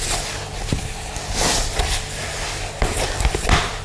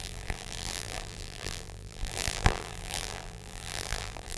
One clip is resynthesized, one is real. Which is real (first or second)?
first